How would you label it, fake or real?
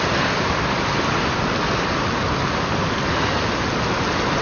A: real